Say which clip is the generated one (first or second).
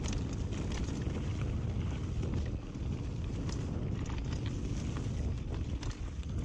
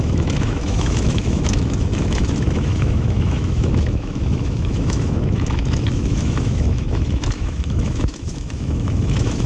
second